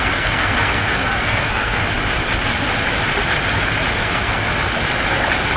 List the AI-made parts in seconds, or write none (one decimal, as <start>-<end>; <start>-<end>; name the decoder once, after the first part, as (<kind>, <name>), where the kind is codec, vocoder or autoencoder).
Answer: 0.0-1.8 (codec, SNAC); 4.0-4.5